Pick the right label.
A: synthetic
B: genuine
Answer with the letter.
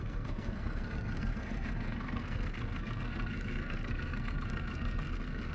A